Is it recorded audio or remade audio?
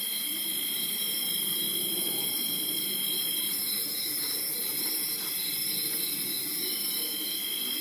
recorded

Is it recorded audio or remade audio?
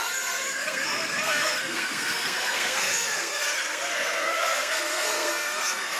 remade